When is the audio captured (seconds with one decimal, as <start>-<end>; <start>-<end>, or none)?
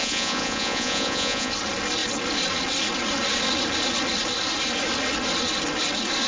1.5-6.3